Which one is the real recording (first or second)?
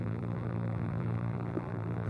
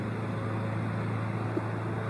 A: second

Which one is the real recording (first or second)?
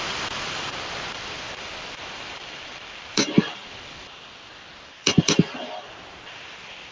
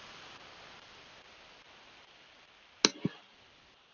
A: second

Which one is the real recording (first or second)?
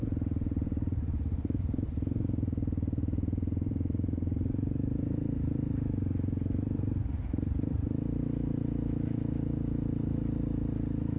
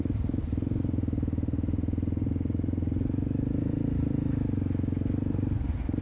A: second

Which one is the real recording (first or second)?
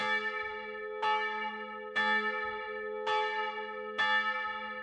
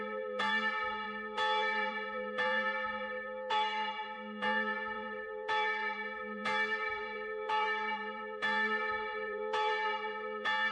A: first